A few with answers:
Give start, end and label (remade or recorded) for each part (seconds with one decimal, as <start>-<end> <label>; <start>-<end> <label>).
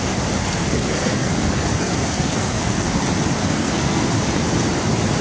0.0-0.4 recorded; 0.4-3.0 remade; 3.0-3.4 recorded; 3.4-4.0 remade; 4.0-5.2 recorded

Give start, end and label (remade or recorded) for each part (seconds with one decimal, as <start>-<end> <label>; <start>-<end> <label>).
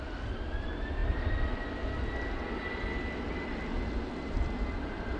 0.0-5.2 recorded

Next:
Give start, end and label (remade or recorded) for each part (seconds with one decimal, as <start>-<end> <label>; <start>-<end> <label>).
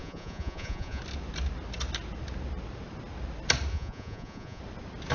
0.0-1.0 remade; 1.0-3.7 recorded; 3.7-4.6 remade; 4.6-5.1 recorded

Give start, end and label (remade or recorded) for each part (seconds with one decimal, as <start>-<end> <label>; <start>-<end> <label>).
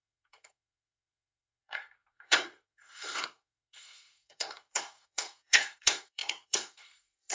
0.0-7.3 remade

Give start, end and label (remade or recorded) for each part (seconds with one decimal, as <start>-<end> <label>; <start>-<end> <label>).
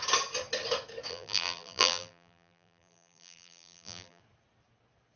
0.0-1.1 recorded; 1.1-4.2 remade; 4.2-5.2 recorded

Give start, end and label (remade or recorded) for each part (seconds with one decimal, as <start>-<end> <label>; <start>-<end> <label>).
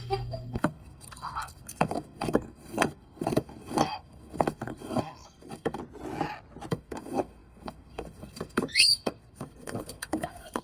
0.0-5.8 remade; 5.8-6.7 recorded; 6.7-10.6 remade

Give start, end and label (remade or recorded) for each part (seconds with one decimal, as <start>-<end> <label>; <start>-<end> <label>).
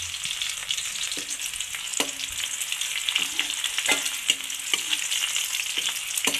0.0-0.6 recorded; 0.6-1.4 remade; 1.4-6.4 recorded